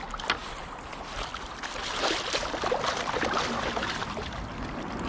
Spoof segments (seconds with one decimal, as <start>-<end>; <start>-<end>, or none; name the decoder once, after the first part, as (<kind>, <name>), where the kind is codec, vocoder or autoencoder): none

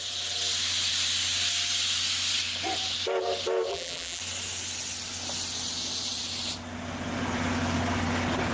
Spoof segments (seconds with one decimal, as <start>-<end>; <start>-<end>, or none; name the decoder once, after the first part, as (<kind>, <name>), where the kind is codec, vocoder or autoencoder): 3.7-4.2 (vocoder, BigVGAN v2)

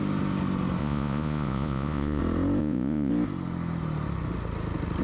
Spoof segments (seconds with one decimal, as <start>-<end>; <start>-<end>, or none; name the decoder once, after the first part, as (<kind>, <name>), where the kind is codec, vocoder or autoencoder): 0.8-2.2 (vocoder, Vocos); 2.6-3.1

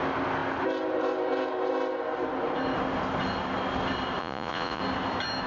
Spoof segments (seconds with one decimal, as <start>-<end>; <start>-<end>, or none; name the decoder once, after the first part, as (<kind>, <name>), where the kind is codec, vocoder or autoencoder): 4.2-4.8 (vocoder, Vocos)

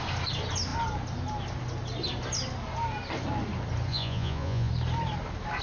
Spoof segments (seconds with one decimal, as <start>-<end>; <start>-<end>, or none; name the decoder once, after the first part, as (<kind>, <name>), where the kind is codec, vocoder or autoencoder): 3.9-4.7 (vocoder, Vocos)

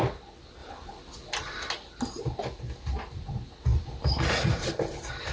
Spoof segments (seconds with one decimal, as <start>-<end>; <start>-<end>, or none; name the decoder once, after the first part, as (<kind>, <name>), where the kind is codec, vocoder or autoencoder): none

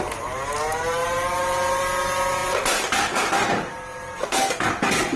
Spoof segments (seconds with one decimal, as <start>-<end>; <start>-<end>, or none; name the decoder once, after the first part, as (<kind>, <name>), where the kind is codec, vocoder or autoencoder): 4.2-4.7 (codec, SNAC)

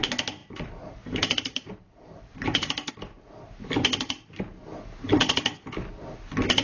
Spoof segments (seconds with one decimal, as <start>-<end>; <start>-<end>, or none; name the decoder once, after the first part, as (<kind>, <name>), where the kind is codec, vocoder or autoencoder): 0.4-2.9 (vocoder, BigVGAN v2)